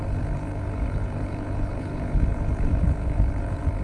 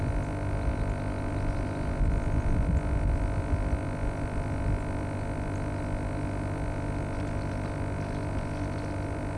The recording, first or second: second